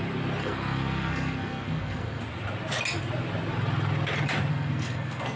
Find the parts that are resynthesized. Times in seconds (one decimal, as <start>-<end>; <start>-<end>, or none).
0.4-2.2; 4.5-5.4